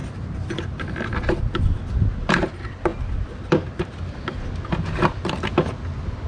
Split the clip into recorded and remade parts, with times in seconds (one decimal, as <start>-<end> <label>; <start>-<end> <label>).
0.0-6.3 recorded